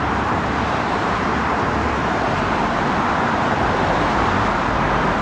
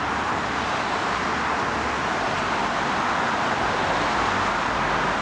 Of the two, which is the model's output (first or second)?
first